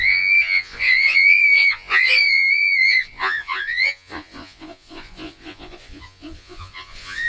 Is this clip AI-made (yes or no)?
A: yes